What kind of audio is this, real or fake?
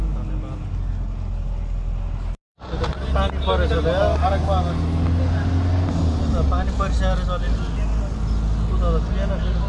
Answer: real